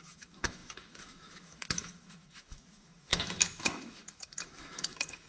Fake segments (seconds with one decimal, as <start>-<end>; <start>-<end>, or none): 0.0-5.3